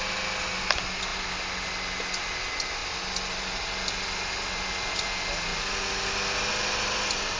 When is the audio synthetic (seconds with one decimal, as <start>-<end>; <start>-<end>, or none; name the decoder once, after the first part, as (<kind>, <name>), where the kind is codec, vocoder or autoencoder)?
none